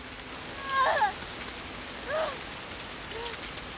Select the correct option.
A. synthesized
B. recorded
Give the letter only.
B